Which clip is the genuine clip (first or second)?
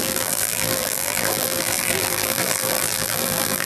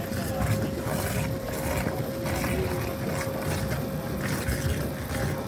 second